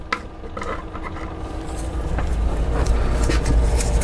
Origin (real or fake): real